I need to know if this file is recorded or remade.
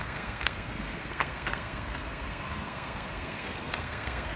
remade